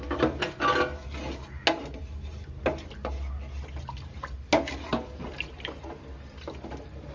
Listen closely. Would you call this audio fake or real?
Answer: real